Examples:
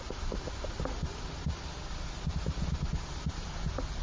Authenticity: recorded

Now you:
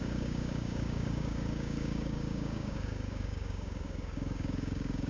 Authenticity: remade